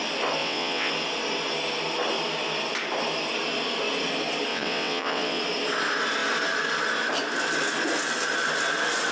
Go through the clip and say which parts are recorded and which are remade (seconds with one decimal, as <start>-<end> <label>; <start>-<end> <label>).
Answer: 0.0-0.4 recorded; 0.4-0.9 remade; 0.9-4.5 recorded; 4.5-5.4 remade; 5.4-9.1 recorded

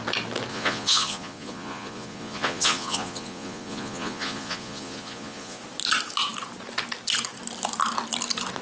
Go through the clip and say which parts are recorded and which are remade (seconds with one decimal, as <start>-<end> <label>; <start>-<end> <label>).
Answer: 0.0-0.5 recorded; 0.5-5.6 remade; 5.6-8.6 recorded

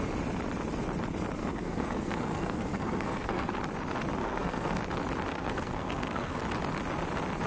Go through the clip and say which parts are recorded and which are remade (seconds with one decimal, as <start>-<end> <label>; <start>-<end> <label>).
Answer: 0.0-1.4 recorded; 1.4-3.5 remade; 3.5-4.2 recorded; 4.2-4.7 remade; 4.7-5.3 recorded; 5.3-6.4 remade; 6.4-7.5 recorded